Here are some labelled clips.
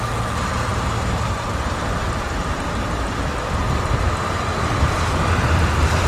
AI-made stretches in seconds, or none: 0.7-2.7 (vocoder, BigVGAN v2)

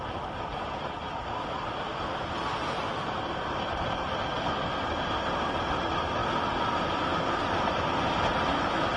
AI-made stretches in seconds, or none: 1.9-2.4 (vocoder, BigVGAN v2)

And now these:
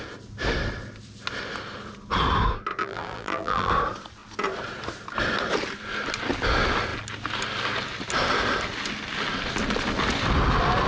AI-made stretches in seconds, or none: 2.8-3.7 (vocoder, BigVGAN v2)

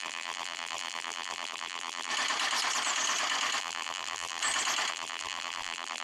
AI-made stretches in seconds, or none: 0.0-2.1 (vocoder, BigVGAN v2); 3.6-4.4; 4.9-6.0